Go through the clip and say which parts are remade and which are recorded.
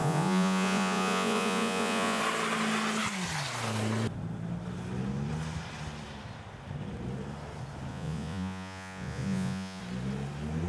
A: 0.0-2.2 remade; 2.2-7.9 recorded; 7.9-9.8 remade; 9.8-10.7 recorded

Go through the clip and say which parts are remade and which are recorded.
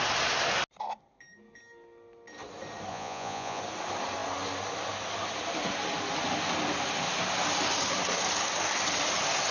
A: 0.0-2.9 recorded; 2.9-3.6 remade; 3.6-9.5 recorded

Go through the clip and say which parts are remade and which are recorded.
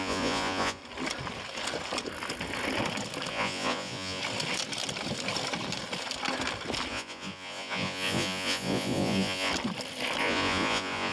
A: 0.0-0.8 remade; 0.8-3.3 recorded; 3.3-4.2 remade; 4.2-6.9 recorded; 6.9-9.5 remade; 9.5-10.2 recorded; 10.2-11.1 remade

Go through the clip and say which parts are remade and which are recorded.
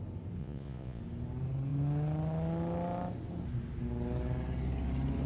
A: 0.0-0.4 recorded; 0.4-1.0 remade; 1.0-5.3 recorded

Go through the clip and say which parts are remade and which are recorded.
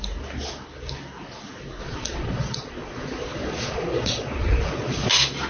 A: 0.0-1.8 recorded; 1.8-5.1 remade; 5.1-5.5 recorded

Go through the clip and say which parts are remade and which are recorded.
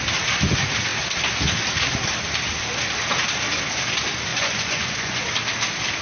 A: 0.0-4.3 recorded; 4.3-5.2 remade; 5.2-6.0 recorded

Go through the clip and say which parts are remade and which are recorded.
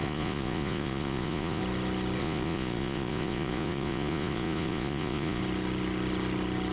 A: 0.0-1.6 remade; 1.6-2.2 recorded; 2.2-5.4 remade; 5.4-6.7 recorded